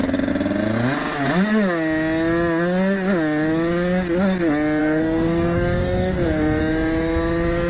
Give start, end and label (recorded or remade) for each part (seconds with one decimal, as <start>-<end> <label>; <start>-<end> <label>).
0.0-4.8 recorded; 4.8-6.6 remade; 6.6-7.7 recorded